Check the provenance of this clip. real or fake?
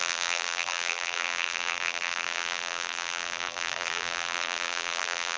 fake